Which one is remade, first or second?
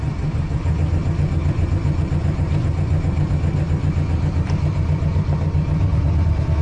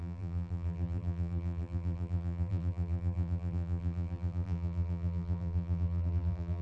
second